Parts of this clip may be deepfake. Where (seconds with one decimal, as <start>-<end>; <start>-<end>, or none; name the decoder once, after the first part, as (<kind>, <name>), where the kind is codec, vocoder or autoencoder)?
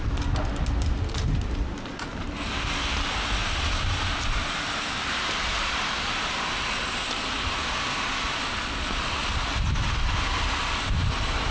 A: 3.4-6.5 (vocoder, BigVGAN v2)